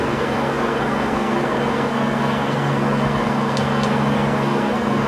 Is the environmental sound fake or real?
fake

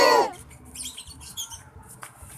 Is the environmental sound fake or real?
real